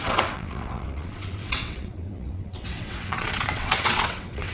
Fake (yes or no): yes